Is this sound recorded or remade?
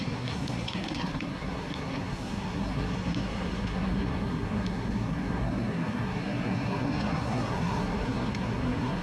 remade